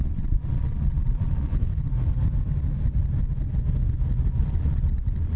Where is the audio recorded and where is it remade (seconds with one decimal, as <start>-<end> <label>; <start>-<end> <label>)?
0.0-1.5 remade; 1.5-4.4 recorded; 4.4-5.4 remade